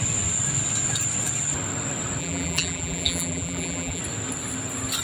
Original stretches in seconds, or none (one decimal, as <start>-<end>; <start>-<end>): 0.0-2.2; 4.0-5.0